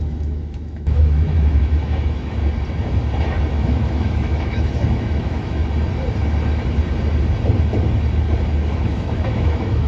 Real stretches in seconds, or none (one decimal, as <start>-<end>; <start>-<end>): 2.4-3.6; 5.6-8.7